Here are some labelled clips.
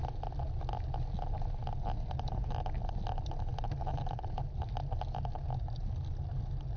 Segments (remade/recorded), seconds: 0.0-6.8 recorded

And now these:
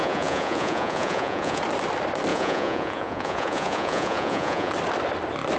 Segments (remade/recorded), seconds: 0.0-1.6 remade; 1.6-2.3 recorded; 2.3-4.7 remade; 4.7-5.6 recorded

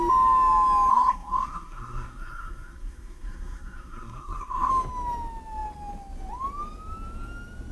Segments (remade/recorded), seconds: 0.0-0.9 recorded; 0.9-4.7 remade; 4.7-7.7 recorded

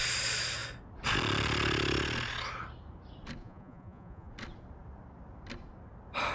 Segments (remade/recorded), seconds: 0.0-3.4 recorded; 3.4-4.3 remade; 4.3-6.3 recorded